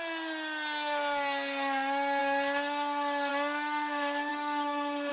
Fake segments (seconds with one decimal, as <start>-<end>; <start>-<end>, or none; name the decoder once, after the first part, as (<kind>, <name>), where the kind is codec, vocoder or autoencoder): 4.3-5.1 (codec, DAC)